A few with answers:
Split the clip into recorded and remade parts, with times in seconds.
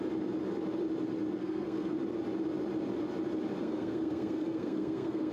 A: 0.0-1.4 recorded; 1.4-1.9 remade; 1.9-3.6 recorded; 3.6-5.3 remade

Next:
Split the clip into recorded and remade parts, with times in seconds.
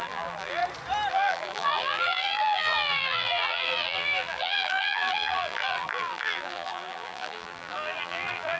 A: 0.0-0.6 remade; 0.6-1.1 recorded; 1.1-8.6 remade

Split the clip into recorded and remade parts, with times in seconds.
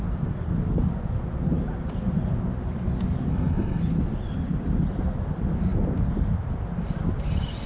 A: 0.0-3.3 recorded; 3.3-3.8 remade; 3.8-7.7 recorded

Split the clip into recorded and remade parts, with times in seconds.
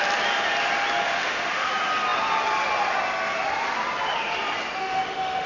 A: 0.0-1.0 recorded; 1.0-1.7 remade; 1.7-4.8 recorded; 4.8-5.5 remade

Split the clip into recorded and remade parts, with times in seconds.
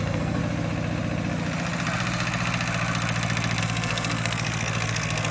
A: 0.0-0.4 remade; 0.4-3.6 recorded; 3.6-5.3 remade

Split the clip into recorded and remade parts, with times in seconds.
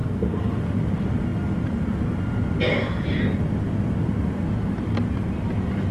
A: 0.0-0.5 remade; 0.5-5.9 recorded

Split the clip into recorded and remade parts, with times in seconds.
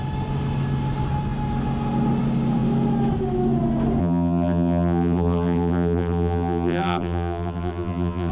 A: 0.0-4.0 recorded; 4.0-8.3 remade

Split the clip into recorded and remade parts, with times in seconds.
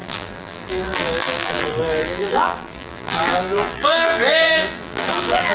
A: 0.0-5.5 remade